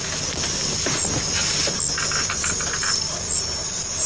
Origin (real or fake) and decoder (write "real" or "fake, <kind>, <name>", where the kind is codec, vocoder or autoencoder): real